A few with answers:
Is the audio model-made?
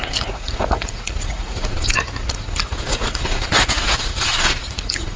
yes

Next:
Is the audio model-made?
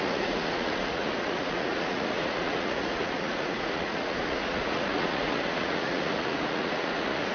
yes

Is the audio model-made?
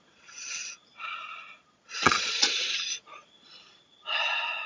yes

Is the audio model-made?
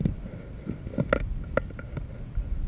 no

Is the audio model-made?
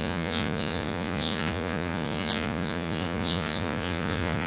yes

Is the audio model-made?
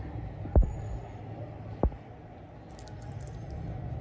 no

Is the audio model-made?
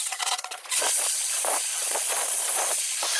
yes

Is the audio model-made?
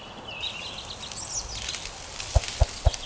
no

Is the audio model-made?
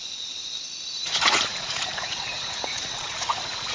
yes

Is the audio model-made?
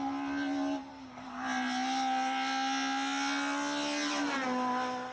no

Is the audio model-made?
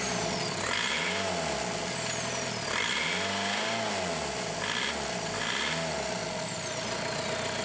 no